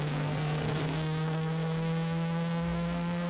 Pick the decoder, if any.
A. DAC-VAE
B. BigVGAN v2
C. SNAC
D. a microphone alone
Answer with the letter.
C